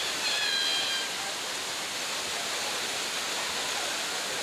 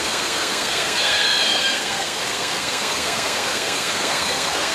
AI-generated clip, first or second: second